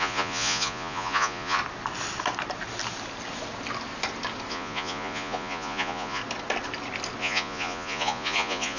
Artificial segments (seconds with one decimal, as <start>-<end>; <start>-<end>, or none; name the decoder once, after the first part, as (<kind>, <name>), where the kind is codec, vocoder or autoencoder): 0.0-1.6 (vocoder, Vocos); 4.5-6.2; 7.2-8.8